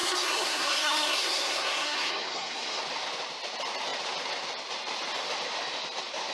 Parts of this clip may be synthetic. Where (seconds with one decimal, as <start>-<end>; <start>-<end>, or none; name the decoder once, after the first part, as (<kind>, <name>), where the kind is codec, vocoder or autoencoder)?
0.0-2.8 (codec, SNAC)